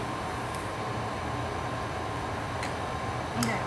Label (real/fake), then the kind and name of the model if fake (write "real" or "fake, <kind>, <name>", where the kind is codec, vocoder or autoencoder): real